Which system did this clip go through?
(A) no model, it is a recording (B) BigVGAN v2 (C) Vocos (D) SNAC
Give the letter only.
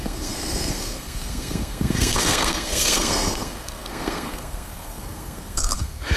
D